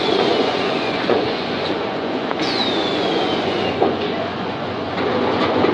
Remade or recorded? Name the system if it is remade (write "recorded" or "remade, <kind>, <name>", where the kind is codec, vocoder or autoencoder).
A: remade, vocoder, Vocos